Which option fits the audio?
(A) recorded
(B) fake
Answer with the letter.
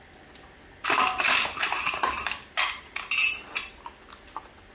A